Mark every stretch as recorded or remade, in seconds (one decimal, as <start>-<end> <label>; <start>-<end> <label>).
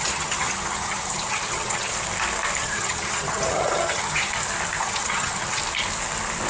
0.0-1.9 remade; 1.9-2.6 recorded; 2.6-4.3 remade; 4.3-4.8 recorded; 4.8-5.6 remade; 5.6-6.5 recorded